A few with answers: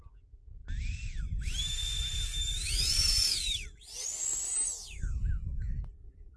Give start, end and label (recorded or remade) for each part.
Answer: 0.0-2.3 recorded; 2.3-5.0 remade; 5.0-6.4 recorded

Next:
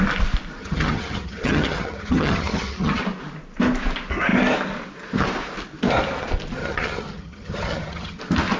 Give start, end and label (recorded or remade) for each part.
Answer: 0.0-0.6 recorded; 0.6-3.0 remade; 3.0-6.6 recorded; 6.6-8.2 remade; 8.2-8.6 recorded